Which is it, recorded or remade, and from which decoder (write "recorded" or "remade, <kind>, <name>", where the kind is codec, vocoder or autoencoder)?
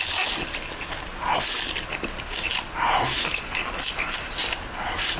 recorded